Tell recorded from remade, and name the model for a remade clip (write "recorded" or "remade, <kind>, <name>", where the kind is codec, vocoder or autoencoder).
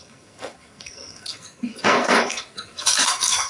remade, codec, SNAC